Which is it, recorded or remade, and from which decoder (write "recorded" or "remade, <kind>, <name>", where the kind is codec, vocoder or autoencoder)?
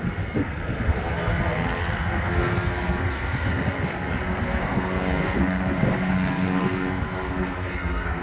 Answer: remade, codec, SNAC